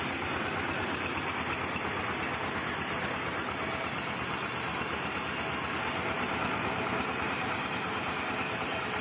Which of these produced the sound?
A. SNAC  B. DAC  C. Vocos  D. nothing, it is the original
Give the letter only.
D